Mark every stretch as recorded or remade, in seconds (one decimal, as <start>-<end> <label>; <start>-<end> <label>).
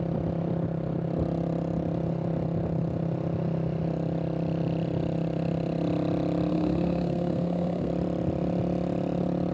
0.0-6.5 recorded; 6.5-7.9 remade; 7.9-9.5 recorded